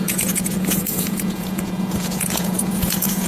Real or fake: fake